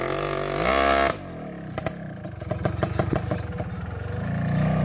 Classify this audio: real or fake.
real